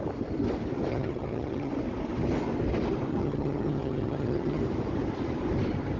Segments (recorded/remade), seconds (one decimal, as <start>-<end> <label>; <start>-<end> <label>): 0.0-0.9 recorded; 0.9-1.7 remade; 1.7-3.1 recorded; 3.1-4.6 remade; 4.6-6.0 recorded

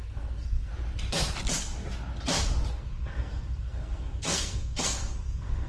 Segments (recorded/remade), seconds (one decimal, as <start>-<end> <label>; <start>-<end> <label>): 0.0-0.7 remade; 0.7-2.7 recorded; 2.7-5.7 remade

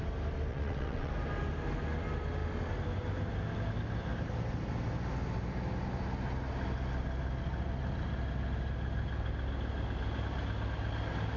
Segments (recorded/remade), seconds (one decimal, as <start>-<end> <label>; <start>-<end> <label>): 0.0-0.5 recorded; 0.5-1.1 remade; 1.1-11.4 recorded

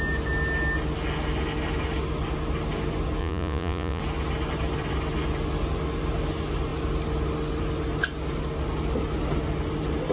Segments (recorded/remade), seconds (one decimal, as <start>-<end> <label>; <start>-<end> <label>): 0.0-3.2 recorded; 3.2-4.0 remade; 4.0-10.1 recorded

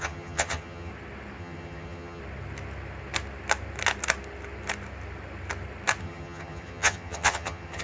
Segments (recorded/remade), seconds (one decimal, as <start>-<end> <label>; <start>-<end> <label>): 0.0-0.9 remade; 0.9-1.4 recorded; 1.4-2.2 remade; 2.2-6.0 recorded; 6.0-7.8 remade

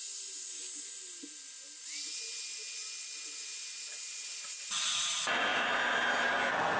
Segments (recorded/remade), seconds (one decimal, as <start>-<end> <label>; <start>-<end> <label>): 0.0-6.8 recorded

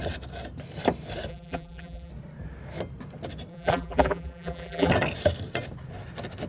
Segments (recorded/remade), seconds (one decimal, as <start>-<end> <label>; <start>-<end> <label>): 0.0-1.3 recorded; 1.3-2.1 remade; 2.1-3.5 recorded; 3.5-4.9 remade; 4.9-6.5 recorded

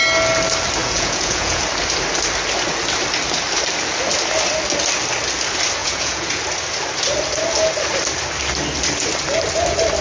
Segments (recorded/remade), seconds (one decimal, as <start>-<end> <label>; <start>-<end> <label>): 0.0-0.8 recorded; 0.8-1.6 remade; 1.6-5.8 recorded; 5.8-6.4 remade; 6.4-10.0 recorded